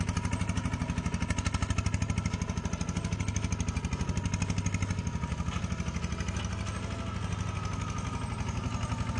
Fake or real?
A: real